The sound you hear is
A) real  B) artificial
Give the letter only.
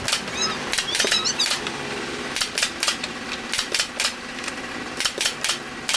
B